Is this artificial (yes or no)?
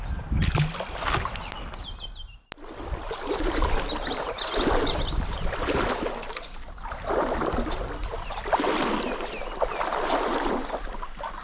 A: no